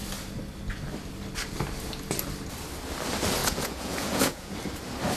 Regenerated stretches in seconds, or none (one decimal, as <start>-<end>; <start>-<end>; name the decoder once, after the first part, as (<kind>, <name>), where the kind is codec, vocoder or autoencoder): 3.4-4.5 (vocoder, Vocos)